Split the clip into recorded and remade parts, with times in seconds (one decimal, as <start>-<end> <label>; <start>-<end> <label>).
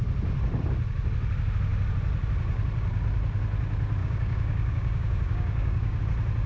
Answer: 0.0-4.0 recorded; 4.0-6.0 remade; 6.0-6.5 recorded